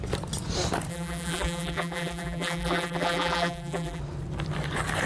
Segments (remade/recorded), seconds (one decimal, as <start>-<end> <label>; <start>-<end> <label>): 0.0-0.9 recorded; 0.9-4.0 remade; 4.0-5.1 recorded